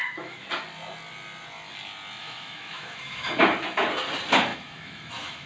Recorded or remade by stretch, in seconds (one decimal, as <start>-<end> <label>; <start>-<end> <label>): 0.0-0.5 remade; 0.5-2.2 recorded; 2.2-3.4 remade; 3.4-4.5 recorded; 4.5-5.5 remade